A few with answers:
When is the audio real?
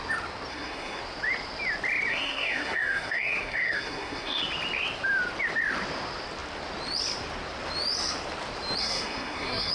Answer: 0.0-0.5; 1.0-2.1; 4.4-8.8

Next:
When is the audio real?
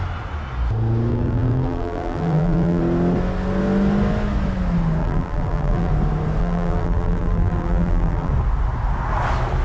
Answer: 0.0-1.1; 2.8-5.0; 5.9-6.4; 8.3-9.6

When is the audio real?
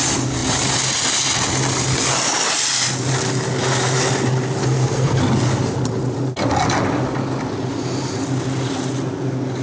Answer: 0.0-4.6; 5.2-9.6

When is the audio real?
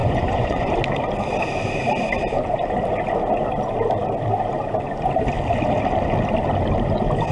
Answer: 0.7-7.3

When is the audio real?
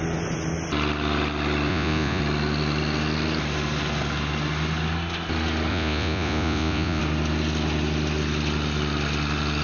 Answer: 0.0-1.7; 2.2-5.7; 7.0-9.6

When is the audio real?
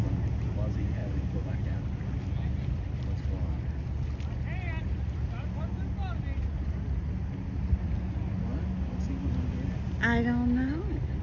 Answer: 0.0-11.2